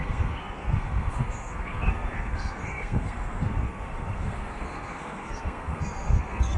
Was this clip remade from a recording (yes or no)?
yes